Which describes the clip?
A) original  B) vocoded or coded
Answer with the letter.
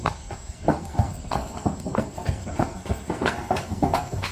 B